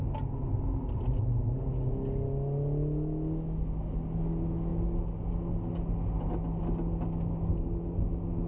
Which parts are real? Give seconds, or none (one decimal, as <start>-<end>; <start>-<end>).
0.0-8.5

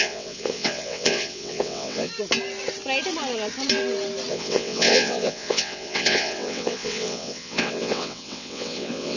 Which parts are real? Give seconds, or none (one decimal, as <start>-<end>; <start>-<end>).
2.1-4.3